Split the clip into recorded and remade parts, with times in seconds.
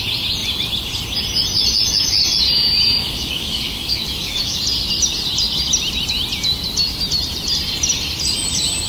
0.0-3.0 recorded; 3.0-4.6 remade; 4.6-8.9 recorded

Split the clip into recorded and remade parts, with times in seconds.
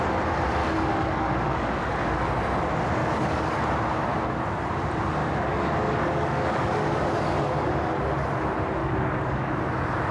0.0-0.6 recorded; 0.6-2.2 remade; 2.2-3.0 recorded; 3.0-3.6 remade; 3.6-5.2 recorded; 5.2-7.7 remade; 7.7-8.8 recorded; 8.8-9.5 remade; 9.5-10.1 recorded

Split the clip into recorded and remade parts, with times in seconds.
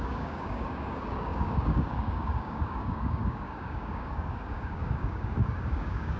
0.0-6.2 remade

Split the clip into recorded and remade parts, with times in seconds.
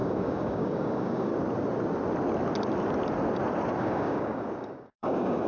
0.0-1.3 remade; 1.3-3.8 recorded; 3.8-5.5 remade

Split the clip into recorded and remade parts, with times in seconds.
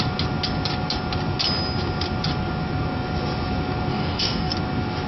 0.0-3.9 recorded; 3.9-4.5 remade; 4.5-5.1 recorded